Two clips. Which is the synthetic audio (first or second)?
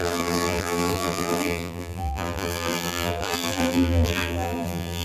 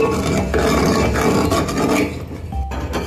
first